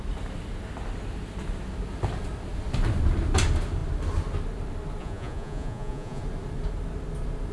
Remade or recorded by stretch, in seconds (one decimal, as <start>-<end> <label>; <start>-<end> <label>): 0.0-5.0 recorded; 5.0-6.2 remade; 6.2-7.5 recorded